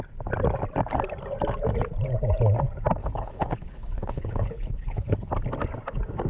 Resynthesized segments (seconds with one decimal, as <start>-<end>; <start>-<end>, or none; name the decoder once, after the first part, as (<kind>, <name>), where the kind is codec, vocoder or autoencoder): 3.0-5.3 (codec, HILCodec)